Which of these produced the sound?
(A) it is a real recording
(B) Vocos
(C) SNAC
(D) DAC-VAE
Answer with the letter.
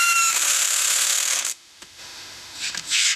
D